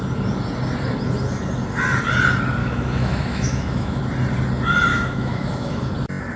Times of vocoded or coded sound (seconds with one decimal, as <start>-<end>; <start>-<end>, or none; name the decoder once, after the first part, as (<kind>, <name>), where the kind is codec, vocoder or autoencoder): 2.6-4.0 (autoencoder, DAC-VAE); 4.9-5.9